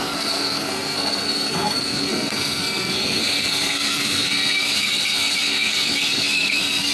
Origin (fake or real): fake